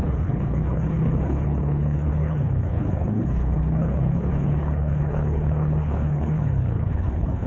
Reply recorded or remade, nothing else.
remade